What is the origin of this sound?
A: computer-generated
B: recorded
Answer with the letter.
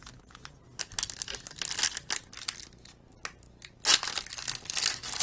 B